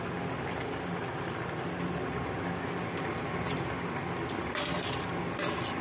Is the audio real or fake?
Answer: real